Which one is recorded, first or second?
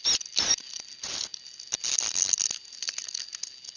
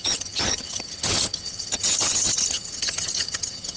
first